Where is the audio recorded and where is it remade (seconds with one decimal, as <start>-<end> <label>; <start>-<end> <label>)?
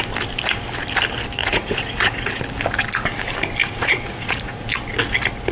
0.0-1.4 recorded; 1.4-2.4 remade; 2.4-3.6 recorded; 3.6-4.7 remade; 4.7-5.5 recorded